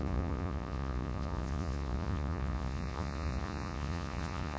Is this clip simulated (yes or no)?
yes